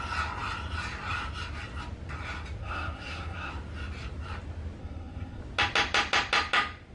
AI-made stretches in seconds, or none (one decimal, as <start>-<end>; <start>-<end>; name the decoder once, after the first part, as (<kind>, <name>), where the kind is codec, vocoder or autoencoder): 2.6-3.5 (codec, SNAC); 4.8-5.4